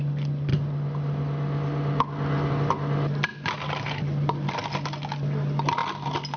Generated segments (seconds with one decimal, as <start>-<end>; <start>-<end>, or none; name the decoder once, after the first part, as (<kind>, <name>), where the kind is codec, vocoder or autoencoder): none